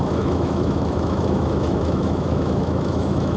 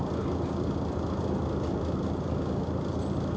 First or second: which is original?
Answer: second